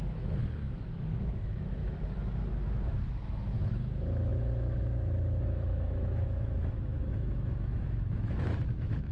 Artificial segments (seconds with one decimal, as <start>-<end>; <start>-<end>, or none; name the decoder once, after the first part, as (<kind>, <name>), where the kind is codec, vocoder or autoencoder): 0.0-9.1 (autoencoder, DAC-VAE)